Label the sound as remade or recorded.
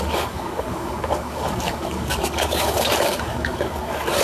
remade